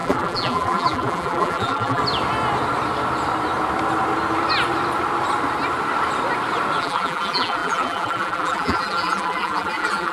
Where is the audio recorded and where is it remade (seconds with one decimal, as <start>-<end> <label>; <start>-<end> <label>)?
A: 0.0-2.0 remade; 2.0-6.8 recorded; 6.8-10.1 remade